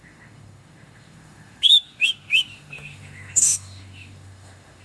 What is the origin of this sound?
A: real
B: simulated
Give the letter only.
B